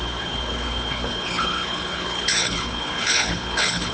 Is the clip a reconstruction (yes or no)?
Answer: yes